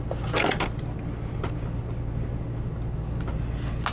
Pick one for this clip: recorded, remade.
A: recorded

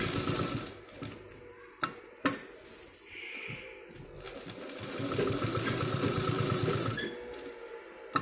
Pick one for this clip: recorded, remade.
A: recorded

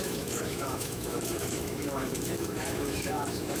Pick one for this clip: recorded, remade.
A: remade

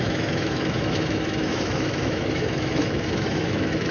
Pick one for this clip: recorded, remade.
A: remade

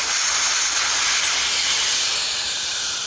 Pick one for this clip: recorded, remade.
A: recorded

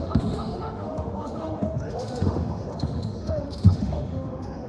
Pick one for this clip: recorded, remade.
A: remade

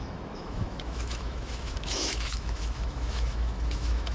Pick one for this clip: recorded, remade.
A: remade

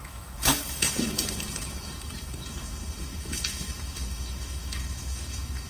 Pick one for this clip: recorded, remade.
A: remade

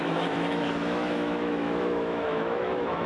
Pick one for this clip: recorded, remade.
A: remade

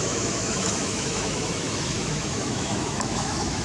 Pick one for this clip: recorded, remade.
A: remade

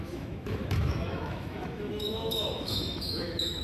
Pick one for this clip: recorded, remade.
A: remade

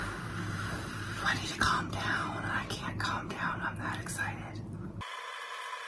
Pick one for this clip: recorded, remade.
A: recorded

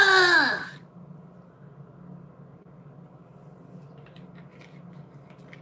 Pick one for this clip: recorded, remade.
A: recorded